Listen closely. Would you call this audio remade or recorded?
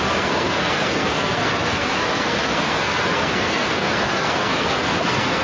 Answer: remade